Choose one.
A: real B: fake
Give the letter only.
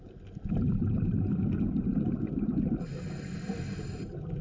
A